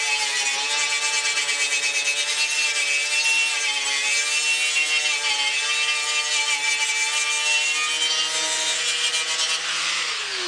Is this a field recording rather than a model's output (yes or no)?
yes